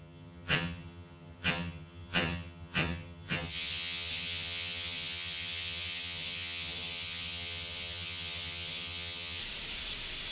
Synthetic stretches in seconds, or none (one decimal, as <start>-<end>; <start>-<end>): 0.0-9.4